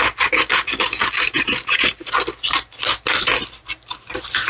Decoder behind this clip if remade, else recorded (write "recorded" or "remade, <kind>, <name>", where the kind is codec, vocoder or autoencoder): recorded